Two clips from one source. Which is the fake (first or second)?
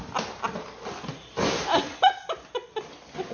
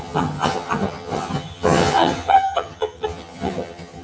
second